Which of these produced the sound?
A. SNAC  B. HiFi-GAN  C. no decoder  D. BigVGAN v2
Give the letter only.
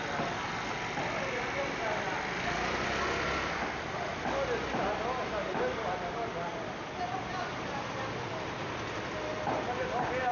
C